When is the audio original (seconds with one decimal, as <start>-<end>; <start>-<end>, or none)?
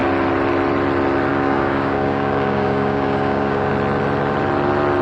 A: 0.0-1.3; 3.7-5.0